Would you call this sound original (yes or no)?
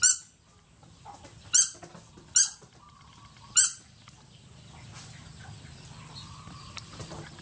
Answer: yes